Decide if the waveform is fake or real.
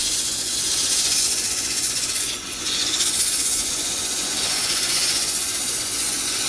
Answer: fake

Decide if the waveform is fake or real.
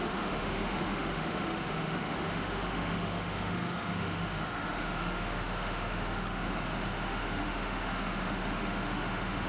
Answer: fake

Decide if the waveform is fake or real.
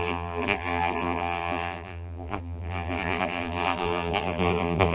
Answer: fake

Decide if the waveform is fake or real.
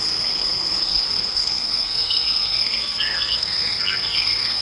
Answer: fake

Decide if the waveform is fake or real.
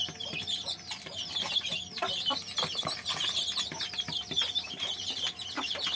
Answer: real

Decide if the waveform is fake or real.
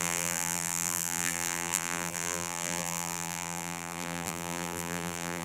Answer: fake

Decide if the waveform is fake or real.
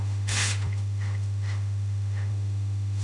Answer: fake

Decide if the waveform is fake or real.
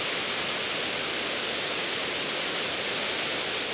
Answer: real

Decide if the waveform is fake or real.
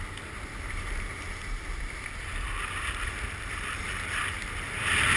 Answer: fake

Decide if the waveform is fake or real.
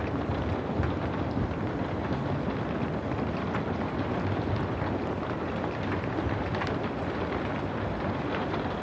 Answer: real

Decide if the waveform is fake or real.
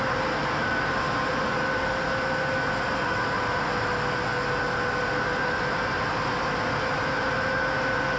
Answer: real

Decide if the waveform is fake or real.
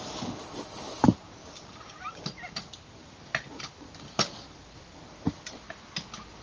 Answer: real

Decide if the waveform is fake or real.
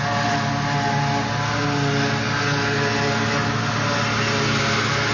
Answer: real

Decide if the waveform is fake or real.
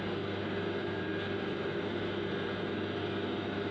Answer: real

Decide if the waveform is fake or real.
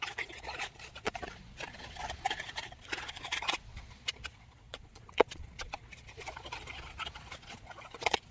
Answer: fake